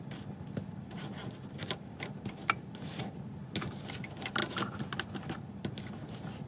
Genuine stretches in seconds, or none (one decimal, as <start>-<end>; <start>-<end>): 0.0-6.5

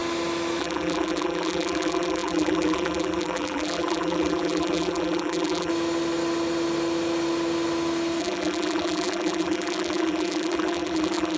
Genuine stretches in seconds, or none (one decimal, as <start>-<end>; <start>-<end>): 0.0-0.6; 5.7-8.2

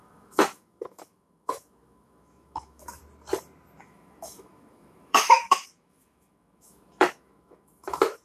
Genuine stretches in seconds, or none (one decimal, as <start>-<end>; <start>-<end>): 3.0-3.8

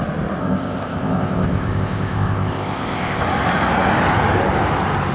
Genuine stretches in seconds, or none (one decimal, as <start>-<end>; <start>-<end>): 0.0-0.4; 3.2-5.1